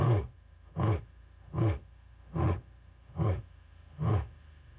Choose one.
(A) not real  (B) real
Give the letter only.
A